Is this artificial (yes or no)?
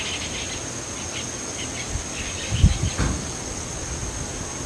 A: no